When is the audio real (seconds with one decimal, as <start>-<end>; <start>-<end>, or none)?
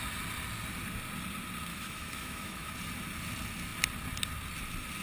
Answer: 0.0-1.7; 2.7-5.0